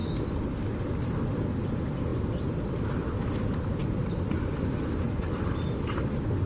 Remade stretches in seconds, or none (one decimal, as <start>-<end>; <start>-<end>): none